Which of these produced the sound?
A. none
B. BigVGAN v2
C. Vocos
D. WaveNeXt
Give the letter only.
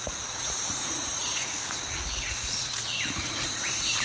C